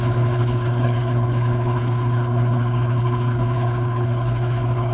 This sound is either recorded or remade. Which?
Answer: remade